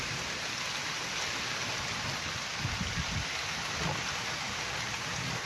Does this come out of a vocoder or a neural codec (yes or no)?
no